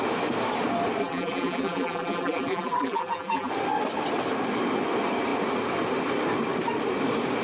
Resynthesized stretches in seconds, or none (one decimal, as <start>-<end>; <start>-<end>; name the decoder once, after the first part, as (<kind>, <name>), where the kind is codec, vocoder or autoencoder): 1.0-3.5 (vocoder, BigVGAN v2)